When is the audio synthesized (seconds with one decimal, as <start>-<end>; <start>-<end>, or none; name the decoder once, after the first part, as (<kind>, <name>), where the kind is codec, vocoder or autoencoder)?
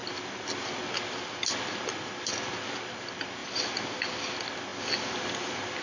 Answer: none